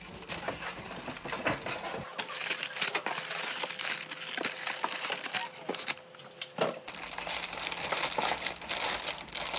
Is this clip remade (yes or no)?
no